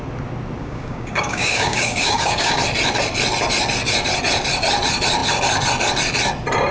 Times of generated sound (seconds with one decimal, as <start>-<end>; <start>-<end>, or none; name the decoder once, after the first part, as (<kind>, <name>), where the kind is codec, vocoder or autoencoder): 0.6-2.6 (codec, DAC)